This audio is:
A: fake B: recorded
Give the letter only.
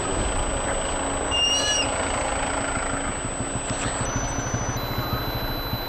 B